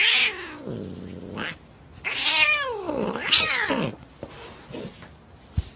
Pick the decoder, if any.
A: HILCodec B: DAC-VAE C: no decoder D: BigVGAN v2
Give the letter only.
C